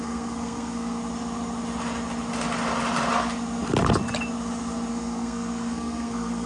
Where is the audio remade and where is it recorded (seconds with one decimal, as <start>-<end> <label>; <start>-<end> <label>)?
0.0-1.0 remade; 1.0-4.9 recorded; 4.9-6.5 remade